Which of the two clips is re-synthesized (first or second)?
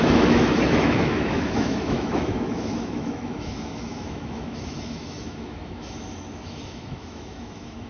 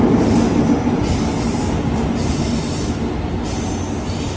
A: first